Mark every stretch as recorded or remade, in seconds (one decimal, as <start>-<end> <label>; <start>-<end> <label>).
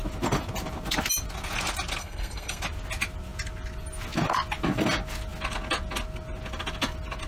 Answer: 0.0-2.0 recorded; 2.0-2.6 remade; 2.6-7.3 recorded